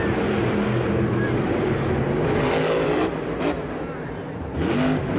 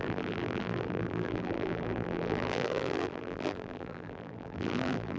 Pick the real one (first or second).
first